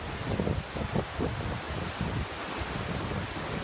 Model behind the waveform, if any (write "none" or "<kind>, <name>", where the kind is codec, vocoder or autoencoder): none